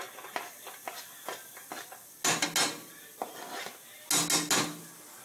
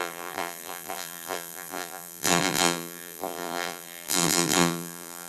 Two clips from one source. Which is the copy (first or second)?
second